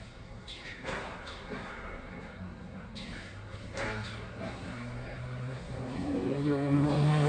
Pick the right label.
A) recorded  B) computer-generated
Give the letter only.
B